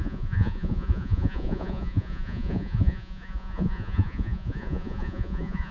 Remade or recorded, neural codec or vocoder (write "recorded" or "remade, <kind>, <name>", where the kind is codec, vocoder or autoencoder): remade, vocoder, Vocos